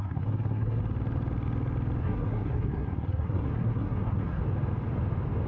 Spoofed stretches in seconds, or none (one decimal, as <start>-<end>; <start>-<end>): 0.0-0.8; 2.0-4.4